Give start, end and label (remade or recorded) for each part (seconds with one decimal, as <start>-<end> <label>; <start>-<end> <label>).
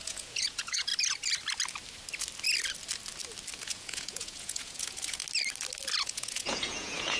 0.0-0.9 remade; 0.9-3.6 recorded; 3.6-5.2 remade; 5.2-6.0 recorded; 6.0-7.2 remade